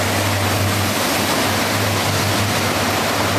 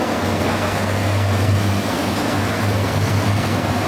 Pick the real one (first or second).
first